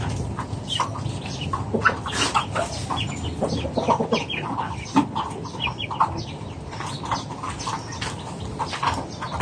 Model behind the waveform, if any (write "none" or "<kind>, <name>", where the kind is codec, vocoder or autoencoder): none